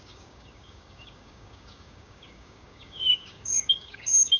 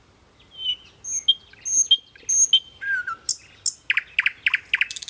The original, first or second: second